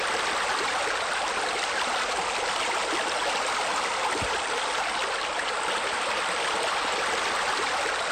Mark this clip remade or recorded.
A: recorded